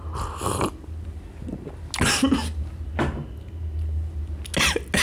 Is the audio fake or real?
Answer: real